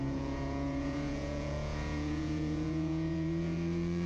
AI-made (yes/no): yes